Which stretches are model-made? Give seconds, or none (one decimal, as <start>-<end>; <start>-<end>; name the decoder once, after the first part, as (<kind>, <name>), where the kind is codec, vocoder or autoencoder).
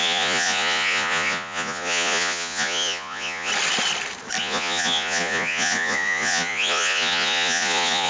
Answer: 0.0-3.5 (vocoder, Vocos); 4.4-8.1